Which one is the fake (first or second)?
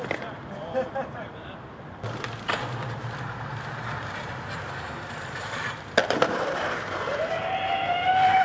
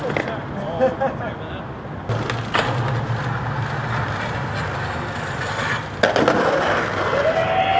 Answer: first